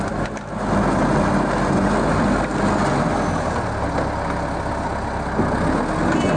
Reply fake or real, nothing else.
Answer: real